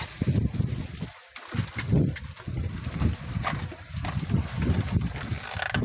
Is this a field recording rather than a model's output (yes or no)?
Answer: yes